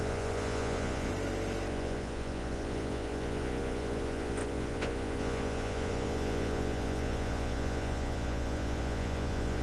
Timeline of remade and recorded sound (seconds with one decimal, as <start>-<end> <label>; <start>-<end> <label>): 0.0-1.1 remade; 1.1-1.7 recorded; 1.7-9.6 remade